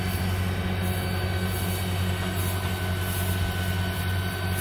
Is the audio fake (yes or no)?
no